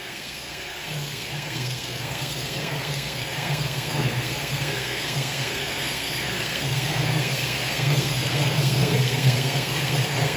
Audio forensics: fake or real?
fake